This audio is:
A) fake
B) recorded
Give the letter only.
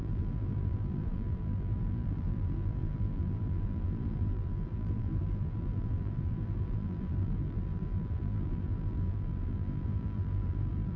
A